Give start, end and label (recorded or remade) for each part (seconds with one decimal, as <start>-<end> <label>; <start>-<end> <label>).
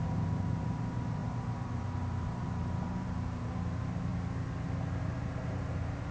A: 0.0-4.1 remade; 4.1-5.0 recorded; 5.0-6.1 remade